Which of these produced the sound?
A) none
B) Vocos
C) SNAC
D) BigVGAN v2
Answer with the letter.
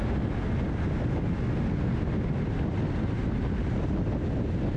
A